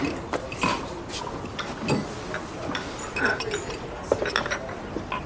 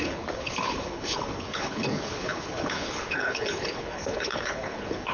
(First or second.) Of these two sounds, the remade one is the second